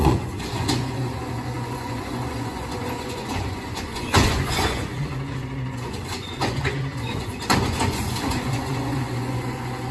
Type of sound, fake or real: fake